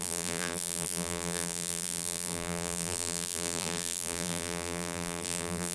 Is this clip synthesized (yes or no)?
yes